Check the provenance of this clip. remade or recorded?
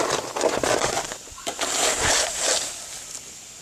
remade